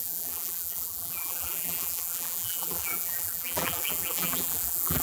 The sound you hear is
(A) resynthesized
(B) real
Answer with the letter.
A